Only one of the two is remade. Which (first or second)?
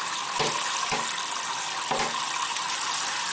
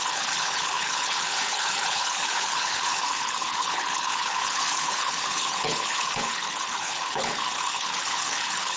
second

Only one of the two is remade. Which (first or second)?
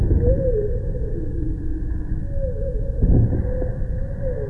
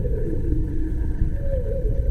second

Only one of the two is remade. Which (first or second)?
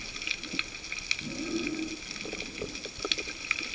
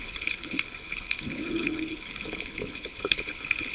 second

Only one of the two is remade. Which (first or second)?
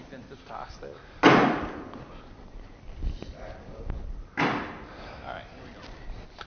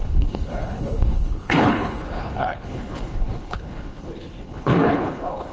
second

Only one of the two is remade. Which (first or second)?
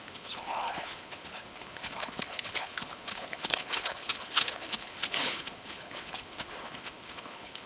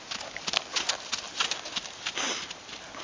first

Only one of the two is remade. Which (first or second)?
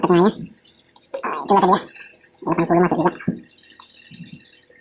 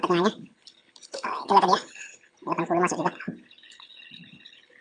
second